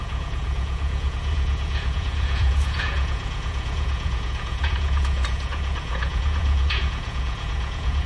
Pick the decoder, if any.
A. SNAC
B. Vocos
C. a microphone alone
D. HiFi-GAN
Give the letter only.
B